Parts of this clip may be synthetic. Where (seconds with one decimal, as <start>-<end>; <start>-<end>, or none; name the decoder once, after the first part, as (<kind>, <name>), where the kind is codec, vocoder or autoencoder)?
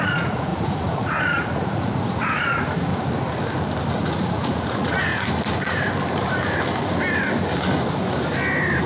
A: 0.0-2.9 (vocoder, Vocos); 3.9-5.1